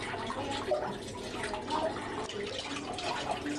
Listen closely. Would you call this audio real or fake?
real